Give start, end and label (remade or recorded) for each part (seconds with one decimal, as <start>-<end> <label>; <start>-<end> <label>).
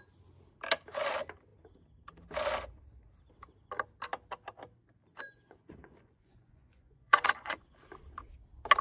0.0-5.1 recorded; 5.1-7.7 remade; 7.7-8.8 recorded